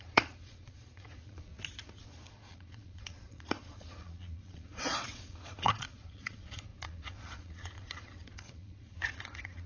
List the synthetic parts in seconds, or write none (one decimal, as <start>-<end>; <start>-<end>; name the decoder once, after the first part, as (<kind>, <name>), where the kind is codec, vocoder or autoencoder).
0.0-1.5 (vocoder, Vocos); 2.0-9.7